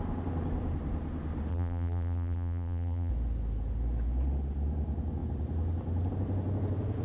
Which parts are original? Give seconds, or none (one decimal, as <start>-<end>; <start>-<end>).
0.0-1.5; 3.1-7.0